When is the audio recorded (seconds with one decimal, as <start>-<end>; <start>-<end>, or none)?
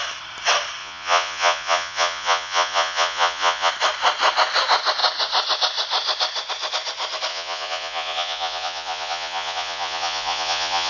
0.0-0.8; 3.7-7.3